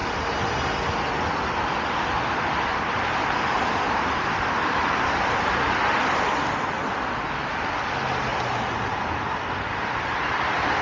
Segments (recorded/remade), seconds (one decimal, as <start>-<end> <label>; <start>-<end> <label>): 0.0-2.7 recorded; 2.7-5.1 remade; 5.1-8.3 recorded; 8.3-10.1 remade; 10.1-10.8 recorded